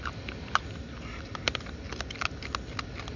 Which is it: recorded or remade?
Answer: recorded